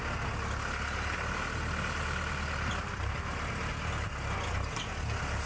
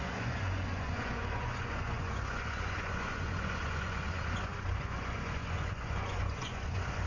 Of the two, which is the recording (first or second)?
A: first